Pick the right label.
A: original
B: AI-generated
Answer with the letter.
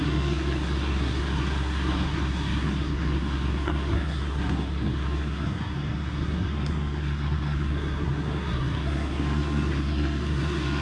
B